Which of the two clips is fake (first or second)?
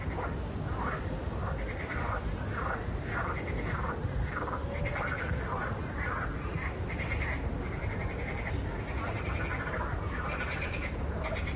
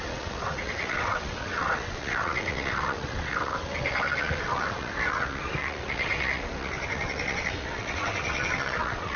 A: second